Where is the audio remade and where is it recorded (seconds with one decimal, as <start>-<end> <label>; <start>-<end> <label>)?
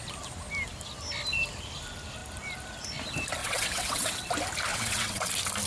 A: 0.0-3.4 recorded; 3.4-4.3 remade; 4.3-4.7 recorded; 4.7-5.3 remade; 5.3-5.7 recorded